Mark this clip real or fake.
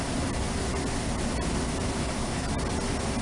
real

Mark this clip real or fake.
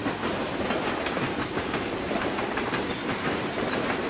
fake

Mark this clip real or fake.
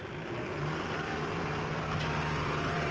fake